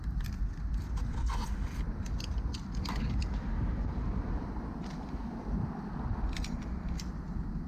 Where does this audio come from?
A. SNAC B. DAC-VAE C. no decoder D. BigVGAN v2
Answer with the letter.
C